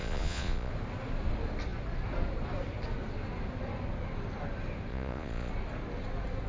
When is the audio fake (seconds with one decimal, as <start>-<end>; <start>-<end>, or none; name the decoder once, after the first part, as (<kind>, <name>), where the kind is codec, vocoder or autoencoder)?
0.0-0.7 (vocoder, Vocos); 4.9-5.5